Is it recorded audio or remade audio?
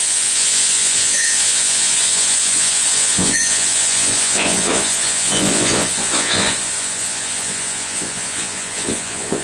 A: remade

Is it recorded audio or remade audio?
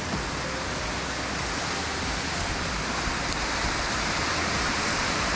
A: recorded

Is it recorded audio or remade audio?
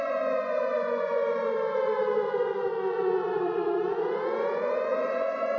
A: remade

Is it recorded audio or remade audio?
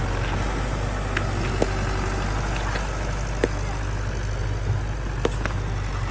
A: recorded